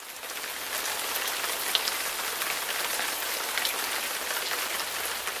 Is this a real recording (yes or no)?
yes